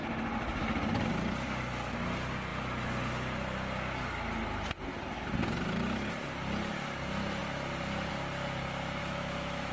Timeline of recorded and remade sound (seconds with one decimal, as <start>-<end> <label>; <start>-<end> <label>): 0.0-9.0 recorded; 9.0-9.7 remade